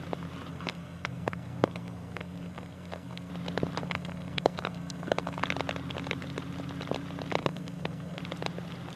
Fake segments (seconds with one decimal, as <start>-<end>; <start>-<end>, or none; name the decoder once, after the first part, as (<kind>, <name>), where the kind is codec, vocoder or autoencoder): 0.5-3.3 (codec, SNAC); 3.8-5.4; 7.4-8.2